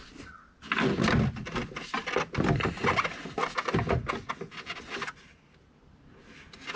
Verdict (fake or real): real